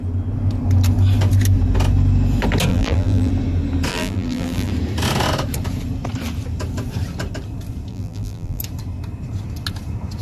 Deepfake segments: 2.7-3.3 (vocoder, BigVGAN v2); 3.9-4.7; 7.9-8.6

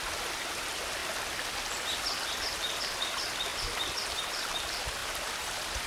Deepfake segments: 3.5-4.2 (vocoder, BigVGAN v2); 5.0-5.9

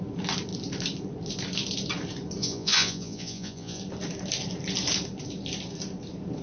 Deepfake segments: 2.4-3.8 (vocoder, Vocos)